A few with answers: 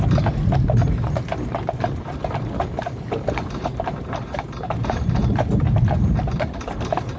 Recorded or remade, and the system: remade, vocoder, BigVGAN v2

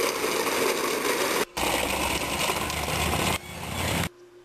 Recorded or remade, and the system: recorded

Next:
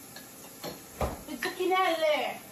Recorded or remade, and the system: recorded